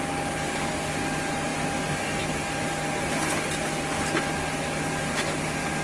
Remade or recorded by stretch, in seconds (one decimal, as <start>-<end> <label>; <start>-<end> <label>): 0.0-5.8 recorded